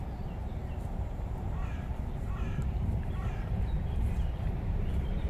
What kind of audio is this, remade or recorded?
remade